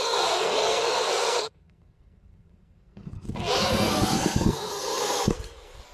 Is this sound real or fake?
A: fake